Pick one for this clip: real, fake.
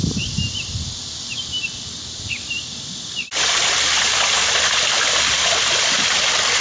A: real